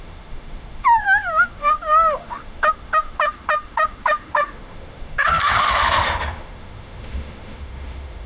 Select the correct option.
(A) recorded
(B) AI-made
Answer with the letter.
B